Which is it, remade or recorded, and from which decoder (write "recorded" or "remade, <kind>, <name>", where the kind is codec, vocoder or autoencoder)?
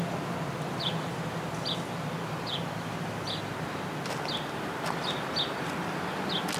recorded